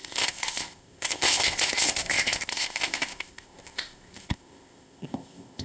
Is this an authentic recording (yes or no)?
no